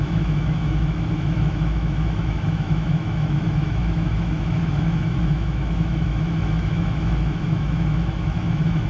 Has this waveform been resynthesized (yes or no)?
yes